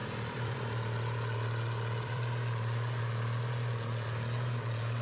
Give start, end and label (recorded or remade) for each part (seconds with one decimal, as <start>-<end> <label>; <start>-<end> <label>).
0.0-3.0 remade; 3.0-5.0 recorded